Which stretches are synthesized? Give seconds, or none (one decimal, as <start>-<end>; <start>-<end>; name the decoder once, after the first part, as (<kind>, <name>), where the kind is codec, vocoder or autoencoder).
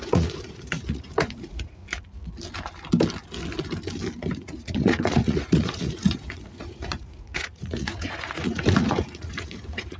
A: 0.0-1.8 (vocoder, Vocos); 4.3-10.0